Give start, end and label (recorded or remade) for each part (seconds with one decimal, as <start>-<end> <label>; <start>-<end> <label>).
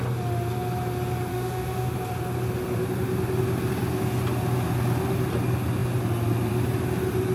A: 0.0-1.3 recorded; 1.3-1.9 remade; 1.9-7.3 recorded